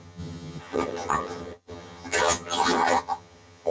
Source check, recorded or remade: remade